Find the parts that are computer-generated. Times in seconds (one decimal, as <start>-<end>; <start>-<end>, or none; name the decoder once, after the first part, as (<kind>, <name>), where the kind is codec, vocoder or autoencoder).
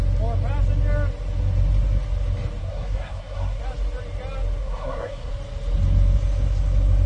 2.6-3.6 (codec, SNAC); 4.6-5.3